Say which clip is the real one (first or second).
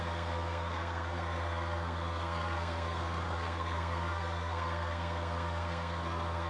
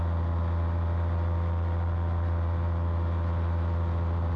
second